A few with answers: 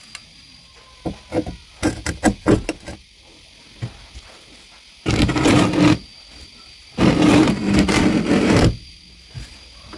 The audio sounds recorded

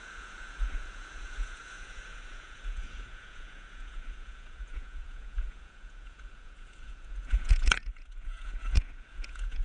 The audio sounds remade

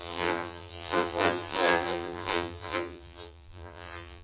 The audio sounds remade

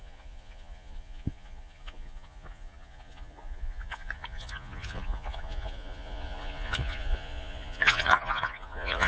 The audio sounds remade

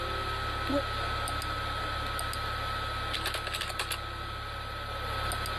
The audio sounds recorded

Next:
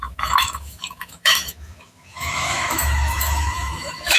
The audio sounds remade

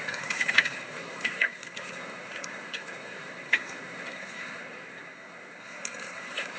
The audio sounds remade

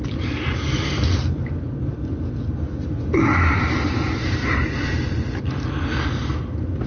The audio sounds recorded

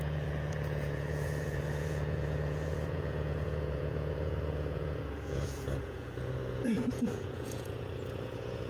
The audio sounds remade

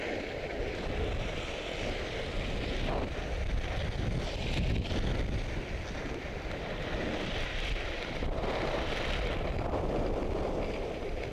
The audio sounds recorded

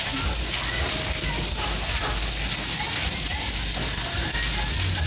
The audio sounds recorded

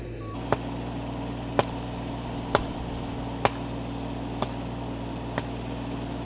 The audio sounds recorded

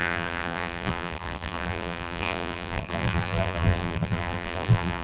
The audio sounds remade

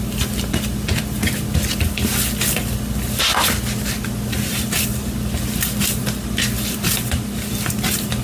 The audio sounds recorded